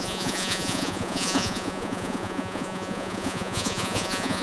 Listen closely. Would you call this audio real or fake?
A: fake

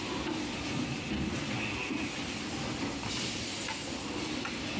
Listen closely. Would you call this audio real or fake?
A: real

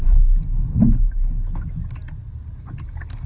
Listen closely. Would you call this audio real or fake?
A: real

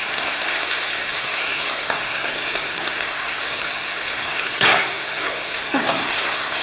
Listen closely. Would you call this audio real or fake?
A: fake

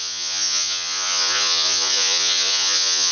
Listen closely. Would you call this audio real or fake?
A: fake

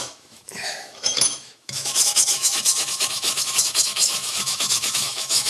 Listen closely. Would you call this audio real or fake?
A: fake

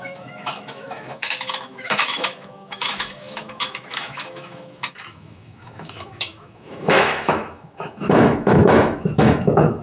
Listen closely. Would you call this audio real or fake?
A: fake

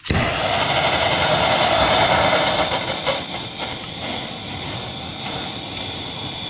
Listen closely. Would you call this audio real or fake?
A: real